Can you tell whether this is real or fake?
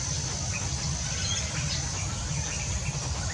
real